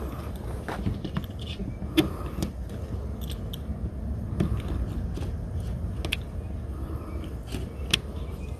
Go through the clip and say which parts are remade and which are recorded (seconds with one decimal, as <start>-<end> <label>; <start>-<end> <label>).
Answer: 0.0-8.6 recorded